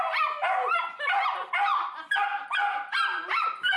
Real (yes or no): yes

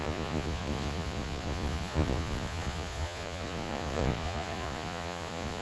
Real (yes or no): no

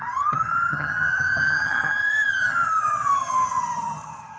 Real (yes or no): no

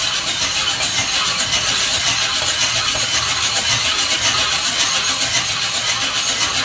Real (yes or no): yes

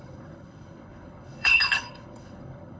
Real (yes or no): no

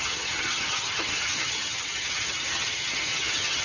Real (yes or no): no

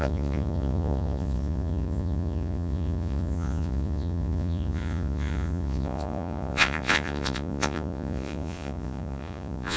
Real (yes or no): no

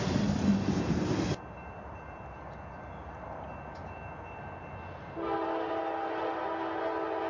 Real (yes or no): yes